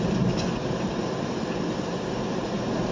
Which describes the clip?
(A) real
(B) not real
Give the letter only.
A